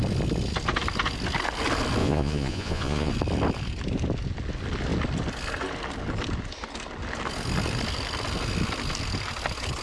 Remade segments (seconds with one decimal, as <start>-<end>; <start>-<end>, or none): 2.0-3.1